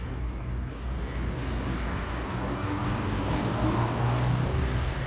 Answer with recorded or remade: remade